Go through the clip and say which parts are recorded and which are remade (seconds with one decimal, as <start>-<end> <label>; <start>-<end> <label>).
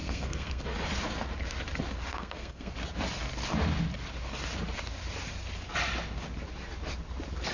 0.0-0.6 remade; 0.6-2.1 recorded; 2.1-2.7 remade; 2.7-7.5 recorded